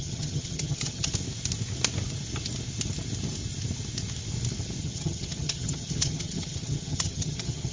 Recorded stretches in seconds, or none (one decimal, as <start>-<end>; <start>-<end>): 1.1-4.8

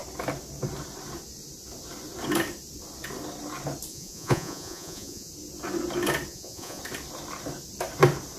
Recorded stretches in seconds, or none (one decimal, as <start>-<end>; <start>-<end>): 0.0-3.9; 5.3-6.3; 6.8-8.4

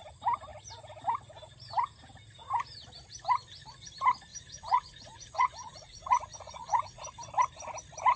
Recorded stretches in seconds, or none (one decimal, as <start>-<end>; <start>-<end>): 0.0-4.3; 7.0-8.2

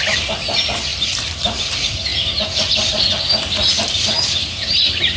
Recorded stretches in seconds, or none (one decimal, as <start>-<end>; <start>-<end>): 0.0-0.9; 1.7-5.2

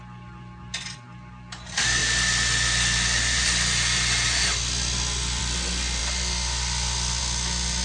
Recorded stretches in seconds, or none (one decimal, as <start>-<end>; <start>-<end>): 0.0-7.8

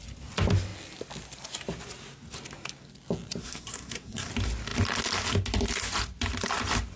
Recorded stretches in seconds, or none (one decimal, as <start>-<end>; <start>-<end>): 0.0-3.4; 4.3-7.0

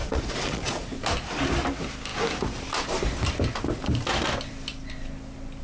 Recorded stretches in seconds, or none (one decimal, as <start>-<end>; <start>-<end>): 0.9-5.6